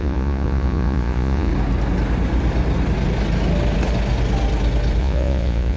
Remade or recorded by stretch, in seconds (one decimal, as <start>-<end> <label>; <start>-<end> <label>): 0.0-1.5 remade; 1.5-5.0 recorded; 5.0-5.8 remade